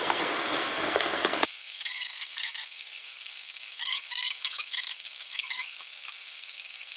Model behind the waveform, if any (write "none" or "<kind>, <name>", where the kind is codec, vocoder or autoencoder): codec, SNAC